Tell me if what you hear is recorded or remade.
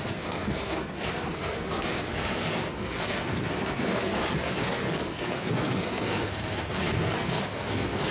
remade